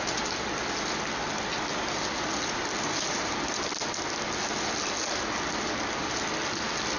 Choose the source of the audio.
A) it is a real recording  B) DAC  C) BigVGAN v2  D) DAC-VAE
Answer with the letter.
A